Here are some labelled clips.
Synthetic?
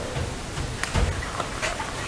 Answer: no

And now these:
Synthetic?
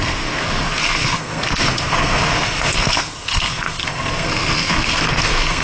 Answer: yes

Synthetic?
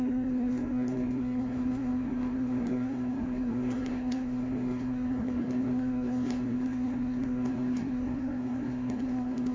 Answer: yes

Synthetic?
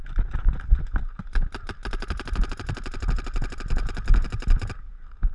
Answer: no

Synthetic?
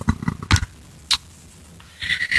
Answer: no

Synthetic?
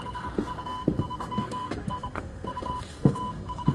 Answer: yes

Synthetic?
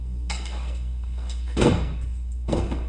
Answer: yes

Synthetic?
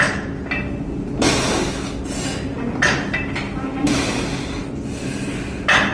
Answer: no